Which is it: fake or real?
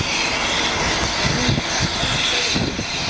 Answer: real